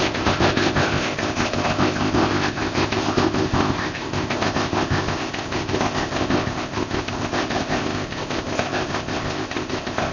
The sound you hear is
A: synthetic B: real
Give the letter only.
A